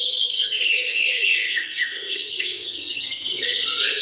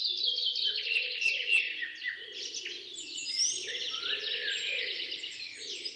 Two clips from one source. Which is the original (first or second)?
second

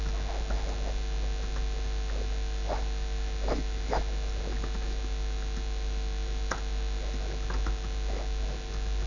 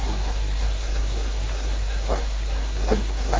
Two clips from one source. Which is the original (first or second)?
first